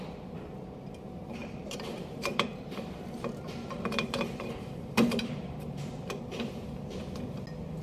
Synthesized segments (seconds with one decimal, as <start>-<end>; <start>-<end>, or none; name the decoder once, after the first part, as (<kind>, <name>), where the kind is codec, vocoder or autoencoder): 1.4-6.1 (vocoder, BigVGAN v2)

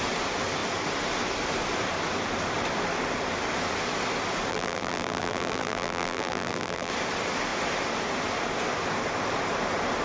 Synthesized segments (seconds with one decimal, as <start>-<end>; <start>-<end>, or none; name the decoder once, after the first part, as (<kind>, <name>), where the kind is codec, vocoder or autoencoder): 4.5-6.9 (vocoder, BigVGAN v2)

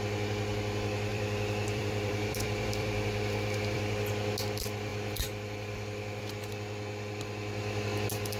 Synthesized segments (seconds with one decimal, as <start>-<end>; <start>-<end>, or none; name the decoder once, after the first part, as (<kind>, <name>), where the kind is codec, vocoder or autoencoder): 1.1-3.8 (vocoder, BigVGAN v2); 4.9-6.2

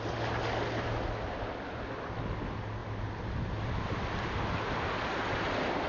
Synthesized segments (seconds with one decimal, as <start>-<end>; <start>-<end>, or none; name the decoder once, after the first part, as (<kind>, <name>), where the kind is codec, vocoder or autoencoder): none